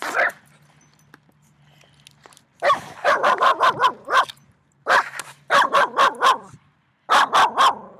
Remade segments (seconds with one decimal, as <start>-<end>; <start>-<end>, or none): 2.5-7.2